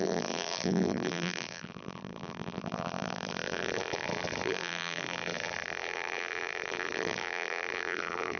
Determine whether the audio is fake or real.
fake